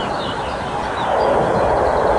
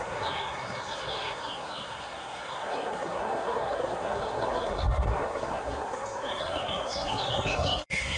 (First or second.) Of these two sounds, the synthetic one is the second